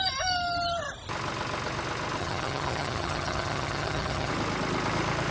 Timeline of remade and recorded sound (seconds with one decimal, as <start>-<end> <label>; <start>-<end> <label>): 0.0-2.2 recorded; 2.2-4.3 remade; 4.3-5.3 recorded